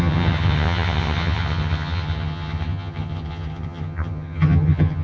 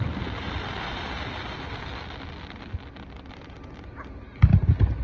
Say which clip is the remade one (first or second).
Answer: first